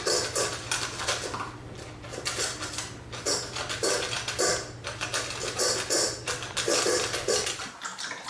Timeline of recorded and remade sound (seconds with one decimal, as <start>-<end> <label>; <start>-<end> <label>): 0.0-8.3 recorded